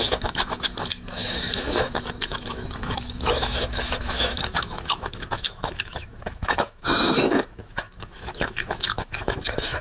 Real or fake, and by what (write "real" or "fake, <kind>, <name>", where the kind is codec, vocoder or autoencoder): fake, autoencoder, DAC-VAE